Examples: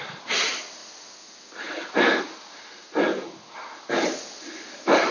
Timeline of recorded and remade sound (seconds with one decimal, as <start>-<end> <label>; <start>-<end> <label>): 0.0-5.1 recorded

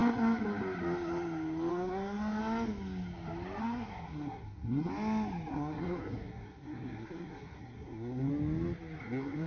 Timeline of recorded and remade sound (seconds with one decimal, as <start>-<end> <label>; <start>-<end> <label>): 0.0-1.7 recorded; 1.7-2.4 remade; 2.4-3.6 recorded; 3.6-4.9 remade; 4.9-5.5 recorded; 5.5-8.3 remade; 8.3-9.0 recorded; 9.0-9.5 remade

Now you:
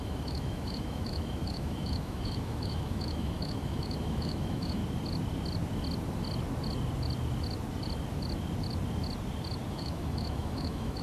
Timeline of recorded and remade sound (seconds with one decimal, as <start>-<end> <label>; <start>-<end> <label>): 0.0-4.8 remade; 4.8-9.7 recorded; 9.7-11.0 remade

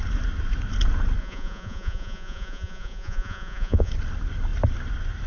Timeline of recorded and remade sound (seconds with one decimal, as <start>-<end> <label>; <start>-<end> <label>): 0.0-1.2 recorded; 1.2-3.9 remade; 3.9-5.3 recorded